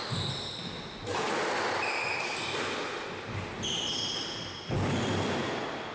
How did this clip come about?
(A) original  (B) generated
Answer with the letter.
A